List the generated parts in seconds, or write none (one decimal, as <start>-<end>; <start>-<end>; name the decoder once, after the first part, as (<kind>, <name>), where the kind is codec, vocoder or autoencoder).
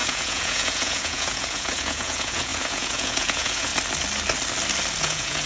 0.0-3.7 (vocoder, Vocos); 5.0-5.5